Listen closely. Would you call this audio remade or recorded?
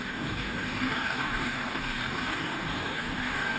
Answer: remade